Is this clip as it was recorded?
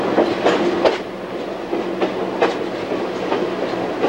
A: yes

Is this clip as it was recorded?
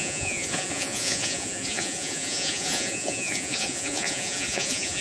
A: no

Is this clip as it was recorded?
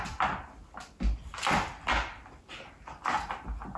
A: yes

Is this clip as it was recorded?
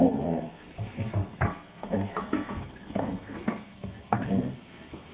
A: no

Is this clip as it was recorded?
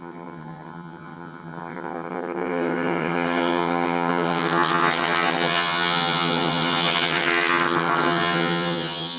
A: no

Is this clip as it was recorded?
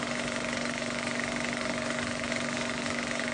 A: no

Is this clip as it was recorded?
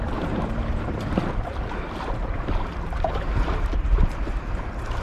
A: no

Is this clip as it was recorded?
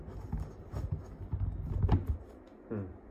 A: yes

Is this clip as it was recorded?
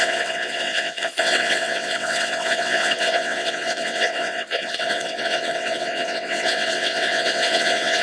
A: no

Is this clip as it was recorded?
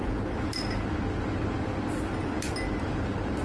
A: yes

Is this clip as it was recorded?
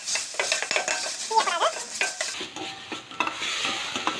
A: yes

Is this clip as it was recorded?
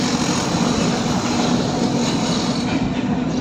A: yes